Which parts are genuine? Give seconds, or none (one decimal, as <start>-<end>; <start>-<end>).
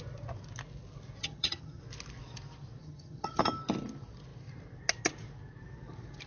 0.0-1.2; 1.8-2.8; 3.4-6.3